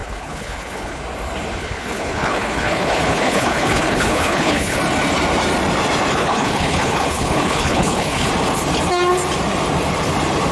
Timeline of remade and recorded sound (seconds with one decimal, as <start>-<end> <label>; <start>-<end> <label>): 0.0-1.0 remade; 1.0-1.6 recorded; 1.6-4.8 remade; 4.8-6.1 recorded; 6.1-8.3 remade; 8.3-10.5 recorded